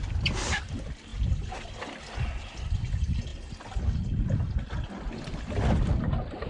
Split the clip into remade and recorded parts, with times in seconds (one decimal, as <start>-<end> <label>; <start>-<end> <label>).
0.0-3.3 remade; 3.3-5.4 recorded; 5.4-6.5 remade

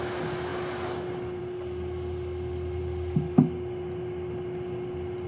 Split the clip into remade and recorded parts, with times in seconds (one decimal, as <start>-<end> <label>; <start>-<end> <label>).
0.0-5.3 recorded